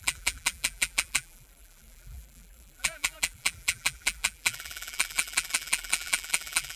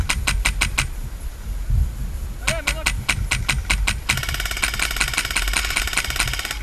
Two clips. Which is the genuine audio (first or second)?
second